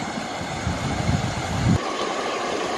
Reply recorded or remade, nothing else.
remade